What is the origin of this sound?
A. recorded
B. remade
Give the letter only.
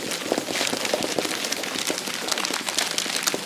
A